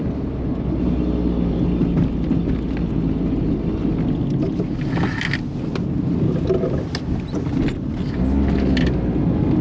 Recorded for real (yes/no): yes